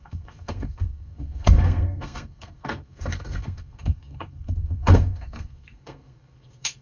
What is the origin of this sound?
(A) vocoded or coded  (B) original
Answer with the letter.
A